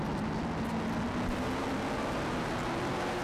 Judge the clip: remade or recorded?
recorded